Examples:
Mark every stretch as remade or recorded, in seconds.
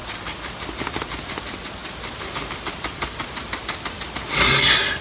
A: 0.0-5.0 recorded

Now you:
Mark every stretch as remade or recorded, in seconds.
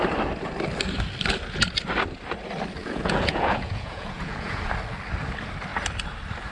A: 0.0-2.8 recorded; 2.8-4.7 remade; 4.7-6.5 recorded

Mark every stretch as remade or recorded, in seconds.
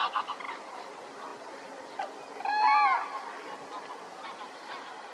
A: 0.0-1.3 remade; 1.3-4.3 recorded; 4.3-5.1 remade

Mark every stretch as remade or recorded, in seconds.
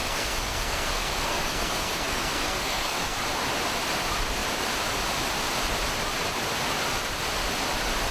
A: 0.0-3.2 remade; 3.2-8.1 recorded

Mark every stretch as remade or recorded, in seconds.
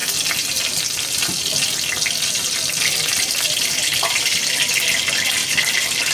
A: 0.0-6.1 recorded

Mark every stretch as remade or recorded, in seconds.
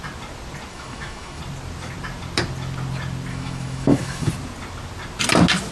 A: 0.0-0.7 recorded; 0.7-1.4 remade; 1.4-3.3 recorded; 3.3-4.3 remade; 4.3-5.7 recorded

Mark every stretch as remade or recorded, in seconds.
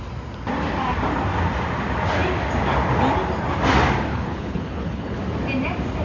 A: 0.0-4.1 recorded; 4.1-5.2 remade; 5.2-6.0 recorded